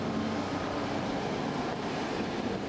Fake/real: real